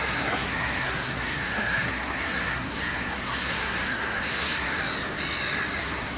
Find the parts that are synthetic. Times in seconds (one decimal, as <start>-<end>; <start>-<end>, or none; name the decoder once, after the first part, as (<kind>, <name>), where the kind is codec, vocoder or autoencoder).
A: 0.0-4.8 (codec, SNAC); 5.8-6.2